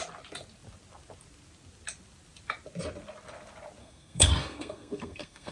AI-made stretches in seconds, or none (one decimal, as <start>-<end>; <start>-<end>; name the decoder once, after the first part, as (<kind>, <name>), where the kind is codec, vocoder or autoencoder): 3.8-5.5 (codec, SNAC)